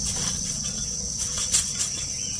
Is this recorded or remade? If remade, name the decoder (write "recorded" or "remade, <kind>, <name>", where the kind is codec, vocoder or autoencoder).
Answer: remade, vocoder, WaveNeXt